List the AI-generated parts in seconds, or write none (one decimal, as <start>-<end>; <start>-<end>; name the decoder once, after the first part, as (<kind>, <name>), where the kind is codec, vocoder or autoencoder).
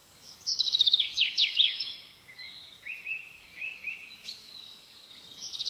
0.0-5.7 (codec, DAC)